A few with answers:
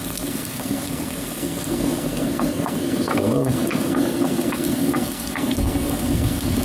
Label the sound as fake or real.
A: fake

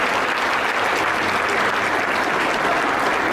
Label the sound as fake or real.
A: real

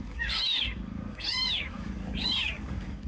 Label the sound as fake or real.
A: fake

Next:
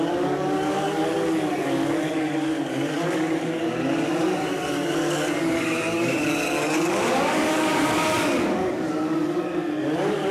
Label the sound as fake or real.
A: fake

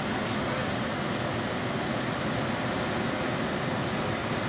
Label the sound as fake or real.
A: real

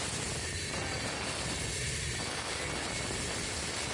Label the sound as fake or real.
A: real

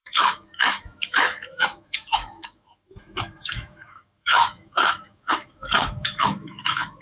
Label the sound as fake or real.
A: fake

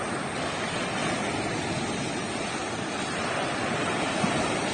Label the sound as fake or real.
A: real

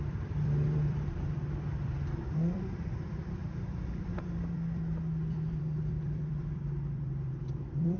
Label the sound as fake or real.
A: fake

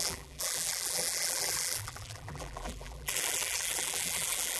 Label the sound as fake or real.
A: fake